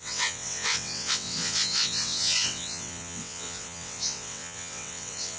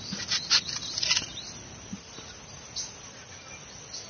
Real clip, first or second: second